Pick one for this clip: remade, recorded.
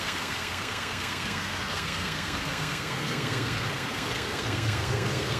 remade